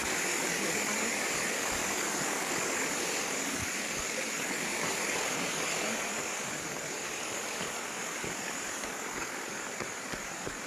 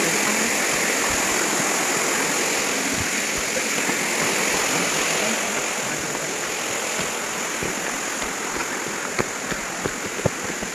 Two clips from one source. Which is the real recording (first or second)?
second